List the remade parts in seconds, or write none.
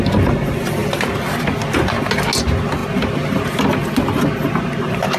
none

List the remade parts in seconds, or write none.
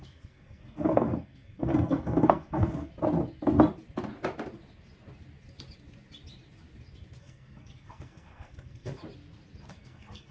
0.0-2.9; 7.2-9.0; 9.7-10.3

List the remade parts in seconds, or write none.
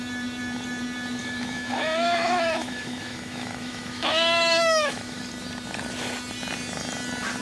1.2-5.2